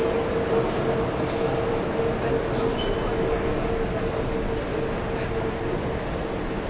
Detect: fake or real real